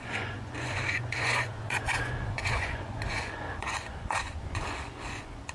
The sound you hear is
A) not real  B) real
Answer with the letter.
A